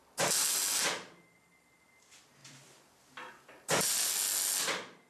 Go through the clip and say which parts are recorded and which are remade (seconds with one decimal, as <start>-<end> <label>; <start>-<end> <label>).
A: 0.0-2.4 recorded; 2.4-4.1 remade; 4.1-5.1 recorded